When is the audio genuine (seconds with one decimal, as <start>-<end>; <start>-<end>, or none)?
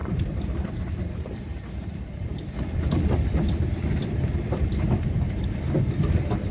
1.7-6.5